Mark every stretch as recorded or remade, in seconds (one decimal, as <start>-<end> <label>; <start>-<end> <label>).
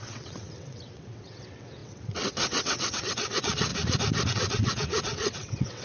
0.0-3.7 remade; 3.7-4.3 recorded; 4.3-5.8 remade